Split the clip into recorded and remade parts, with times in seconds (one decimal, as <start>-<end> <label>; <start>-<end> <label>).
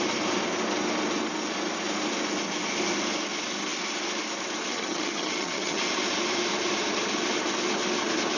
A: 0.0-4.7 recorded; 4.7-5.8 remade; 5.8-8.4 recorded